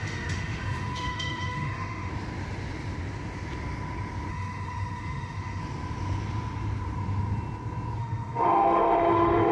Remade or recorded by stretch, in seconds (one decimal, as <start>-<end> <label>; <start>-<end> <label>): 0.0-2.1 remade; 2.1-4.3 recorded; 4.3-5.6 remade; 5.6-8.0 recorded; 8.0-9.5 remade